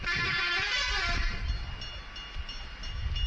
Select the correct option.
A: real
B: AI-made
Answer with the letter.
A